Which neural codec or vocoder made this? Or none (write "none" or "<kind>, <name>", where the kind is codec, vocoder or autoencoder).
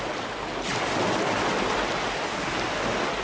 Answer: none